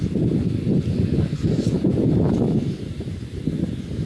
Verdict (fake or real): real